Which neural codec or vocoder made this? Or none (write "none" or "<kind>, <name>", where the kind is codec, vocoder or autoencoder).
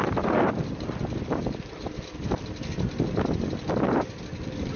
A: none